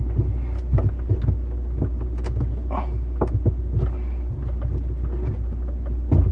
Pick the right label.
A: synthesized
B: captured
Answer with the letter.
B